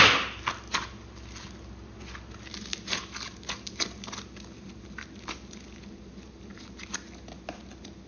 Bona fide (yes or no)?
yes